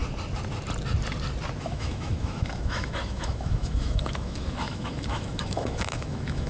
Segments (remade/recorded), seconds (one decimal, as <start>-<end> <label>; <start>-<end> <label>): 0.0-1.6 recorded; 1.6-6.5 remade

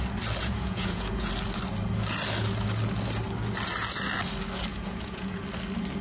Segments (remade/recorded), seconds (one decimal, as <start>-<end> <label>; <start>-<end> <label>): 0.0-0.4 recorded; 0.4-1.3 remade; 1.3-4.7 recorded; 4.7-5.4 remade; 5.4-6.0 recorded